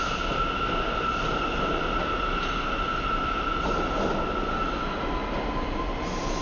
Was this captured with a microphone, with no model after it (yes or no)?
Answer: yes